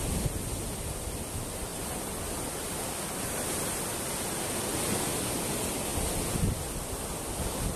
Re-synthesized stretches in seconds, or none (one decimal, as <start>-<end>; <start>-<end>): none